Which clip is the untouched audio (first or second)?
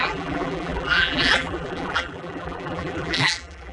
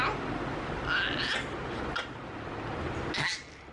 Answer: second